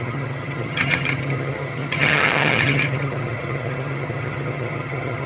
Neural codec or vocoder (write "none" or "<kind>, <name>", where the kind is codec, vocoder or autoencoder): vocoder, HiFi-GAN